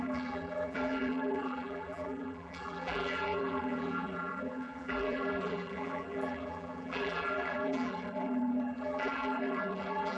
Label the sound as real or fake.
fake